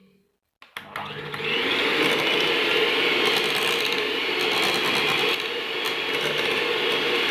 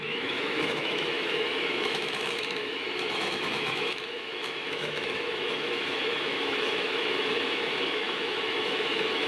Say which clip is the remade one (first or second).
second